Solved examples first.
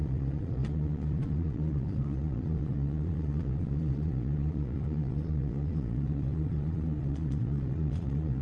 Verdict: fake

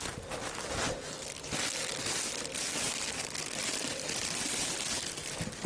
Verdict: real